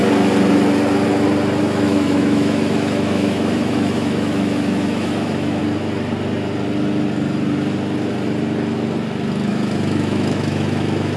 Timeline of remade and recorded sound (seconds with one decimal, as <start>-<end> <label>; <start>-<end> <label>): 0.0-1.6 recorded; 1.6-5.6 remade; 5.6-9.5 recorded; 9.5-11.2 remade